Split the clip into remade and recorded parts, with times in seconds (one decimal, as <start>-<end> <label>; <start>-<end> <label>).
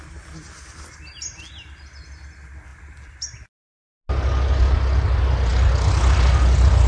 0.0-6.9 recorded